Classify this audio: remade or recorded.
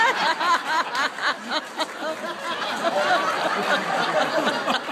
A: recorded